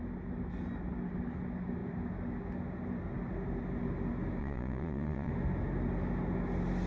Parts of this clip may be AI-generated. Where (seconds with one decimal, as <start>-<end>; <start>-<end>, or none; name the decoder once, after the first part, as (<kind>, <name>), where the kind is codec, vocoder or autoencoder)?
4.4-5.3 (vocoder, Vocos)